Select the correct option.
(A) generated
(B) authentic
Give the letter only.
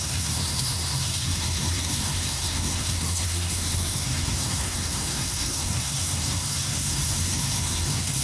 A